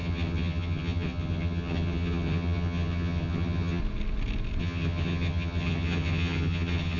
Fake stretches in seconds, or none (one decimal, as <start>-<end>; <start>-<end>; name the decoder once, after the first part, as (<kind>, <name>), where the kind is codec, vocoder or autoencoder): 0.0-3.8 (vocoder, HiFi-GAN); 4.6-7.0